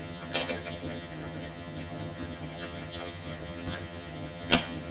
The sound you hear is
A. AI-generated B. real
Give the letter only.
A